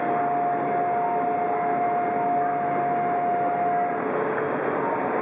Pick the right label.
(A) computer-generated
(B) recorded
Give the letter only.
B